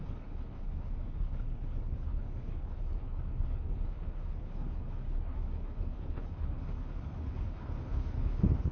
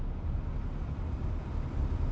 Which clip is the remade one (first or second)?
first